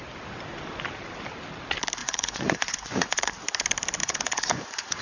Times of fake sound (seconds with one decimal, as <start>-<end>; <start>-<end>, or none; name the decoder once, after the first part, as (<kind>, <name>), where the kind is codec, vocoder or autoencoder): 2.0-3.3 (vocoder, Vocos); 4.0-5.0